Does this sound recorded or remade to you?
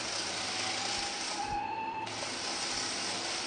recorded